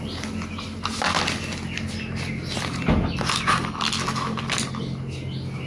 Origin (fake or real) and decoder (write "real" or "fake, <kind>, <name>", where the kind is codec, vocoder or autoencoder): real